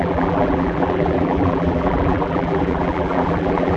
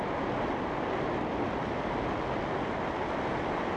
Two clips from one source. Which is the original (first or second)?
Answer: second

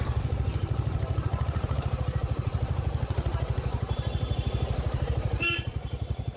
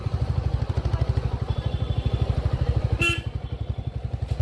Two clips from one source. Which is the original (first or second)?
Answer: second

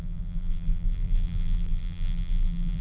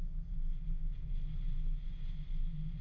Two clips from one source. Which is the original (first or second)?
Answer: second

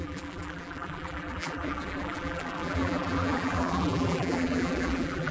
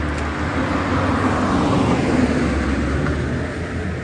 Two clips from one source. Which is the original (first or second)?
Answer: second